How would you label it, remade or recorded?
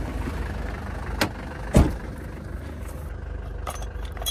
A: recorded